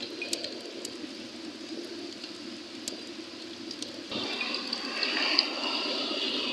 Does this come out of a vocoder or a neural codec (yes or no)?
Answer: no